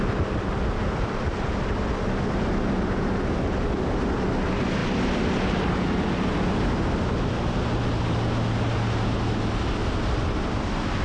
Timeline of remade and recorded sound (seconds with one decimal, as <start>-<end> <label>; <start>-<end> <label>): 0.0-11.0 recorded